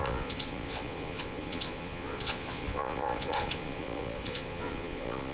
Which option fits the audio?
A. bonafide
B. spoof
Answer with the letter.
B